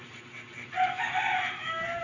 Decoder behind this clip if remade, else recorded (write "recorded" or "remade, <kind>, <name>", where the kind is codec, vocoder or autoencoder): recorded